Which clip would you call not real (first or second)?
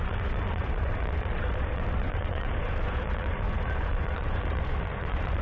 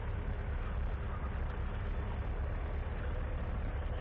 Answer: first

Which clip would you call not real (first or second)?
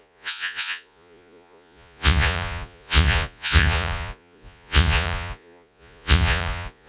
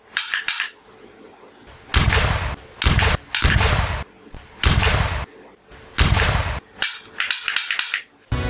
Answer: first